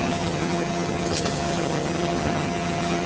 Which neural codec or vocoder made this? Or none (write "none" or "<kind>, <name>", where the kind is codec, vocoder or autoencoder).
vocoder, HiFi-GAN